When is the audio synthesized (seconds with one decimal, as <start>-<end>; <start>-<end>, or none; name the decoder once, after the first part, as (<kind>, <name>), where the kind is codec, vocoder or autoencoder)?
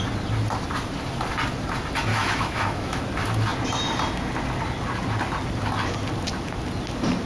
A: 2.1-3.0 (autoencoder, DAC-VAE)